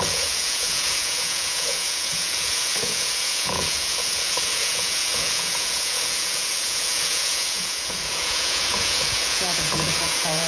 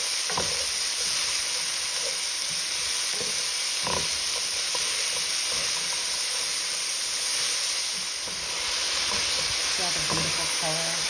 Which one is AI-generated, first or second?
first